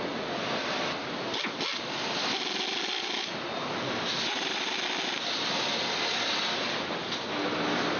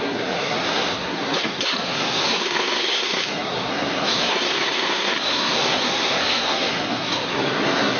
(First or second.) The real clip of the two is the first